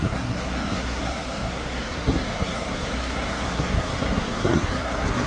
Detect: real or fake fake